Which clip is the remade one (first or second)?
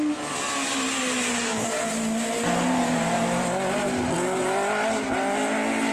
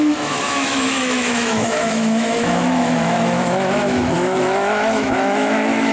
second